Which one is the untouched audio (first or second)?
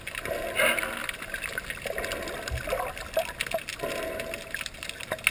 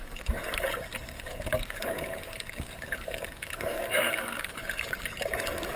first